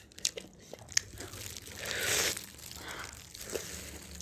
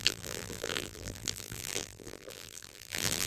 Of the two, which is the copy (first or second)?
second